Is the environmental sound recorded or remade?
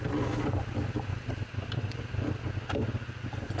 recorded